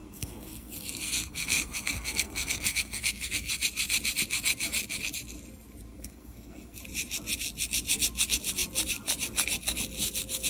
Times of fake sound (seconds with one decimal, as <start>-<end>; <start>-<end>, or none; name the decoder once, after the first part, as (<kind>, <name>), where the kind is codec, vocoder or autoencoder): 0.0-3.5 (codec, SNAC); 5.9-6.8